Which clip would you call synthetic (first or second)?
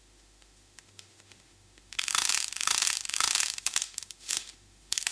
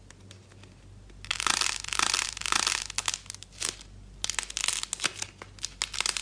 first